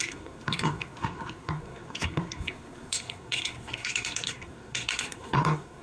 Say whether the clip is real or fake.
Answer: fake